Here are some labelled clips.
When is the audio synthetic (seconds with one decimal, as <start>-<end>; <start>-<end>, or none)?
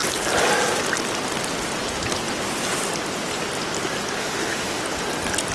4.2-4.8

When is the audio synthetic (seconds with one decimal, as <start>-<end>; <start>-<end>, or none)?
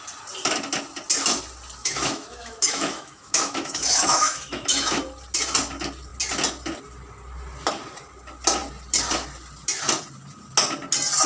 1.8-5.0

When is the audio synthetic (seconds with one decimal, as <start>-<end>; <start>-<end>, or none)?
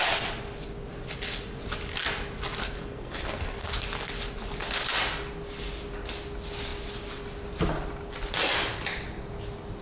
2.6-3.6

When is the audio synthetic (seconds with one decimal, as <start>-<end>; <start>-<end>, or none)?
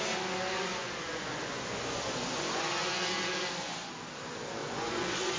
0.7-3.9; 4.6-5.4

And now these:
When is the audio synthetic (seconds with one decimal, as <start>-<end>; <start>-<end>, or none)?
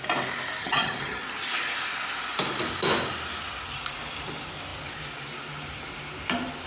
0.6-1.2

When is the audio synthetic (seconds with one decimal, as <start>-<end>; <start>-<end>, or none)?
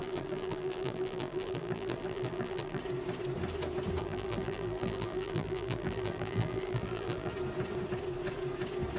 0.0-2.8; 4.0-7.3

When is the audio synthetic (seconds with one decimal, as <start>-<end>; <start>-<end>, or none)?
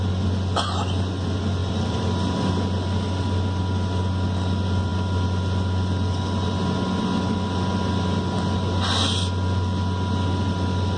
1.6-2.5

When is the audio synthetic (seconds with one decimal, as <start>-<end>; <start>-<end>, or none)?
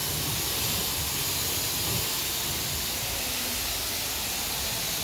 none